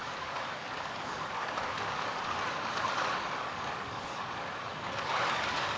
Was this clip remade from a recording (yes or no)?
yes